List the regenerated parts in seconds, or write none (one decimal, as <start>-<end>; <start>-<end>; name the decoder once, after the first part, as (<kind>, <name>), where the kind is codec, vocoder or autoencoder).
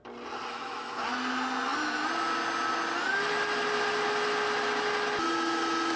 0.5-1.0 (autoencoder, DAC-VAE)